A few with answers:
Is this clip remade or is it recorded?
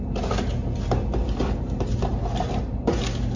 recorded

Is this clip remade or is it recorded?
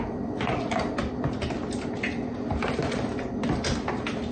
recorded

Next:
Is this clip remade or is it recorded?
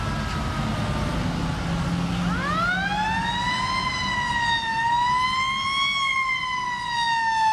recorded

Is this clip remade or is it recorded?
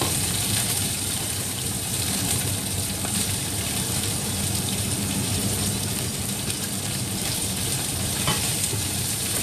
remade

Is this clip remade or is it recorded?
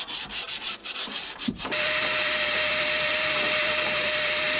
remade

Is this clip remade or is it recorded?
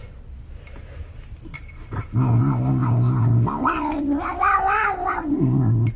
recorded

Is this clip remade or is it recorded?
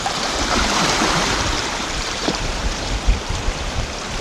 remade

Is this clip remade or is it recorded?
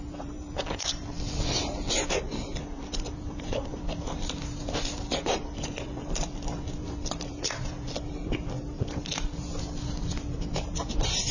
remade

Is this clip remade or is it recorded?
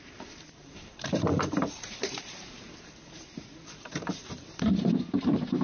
remade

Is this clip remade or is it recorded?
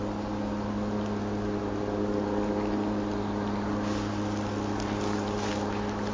recorded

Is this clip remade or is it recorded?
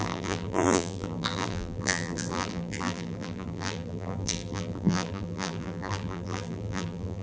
remade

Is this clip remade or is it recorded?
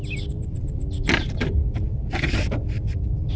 recorded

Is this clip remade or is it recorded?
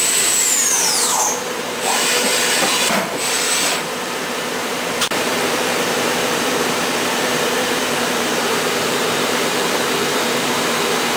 remade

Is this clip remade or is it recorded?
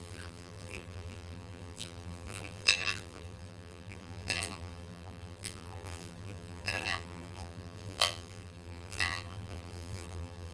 remade